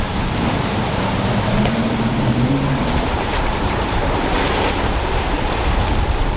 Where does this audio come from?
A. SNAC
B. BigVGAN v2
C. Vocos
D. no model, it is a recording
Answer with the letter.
B